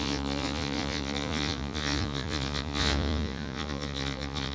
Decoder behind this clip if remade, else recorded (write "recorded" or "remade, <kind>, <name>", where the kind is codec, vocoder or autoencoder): remade, vocoder, Vocos